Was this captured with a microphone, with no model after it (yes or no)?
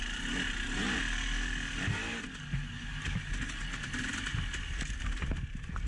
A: yes